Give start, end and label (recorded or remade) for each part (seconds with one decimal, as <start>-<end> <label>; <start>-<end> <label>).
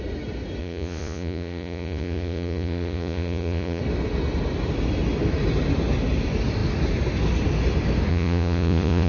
0.0-0.6 recorded; 0.6-3.8 remade; 3.8-8.1 recorded; 8.1-9.1 remade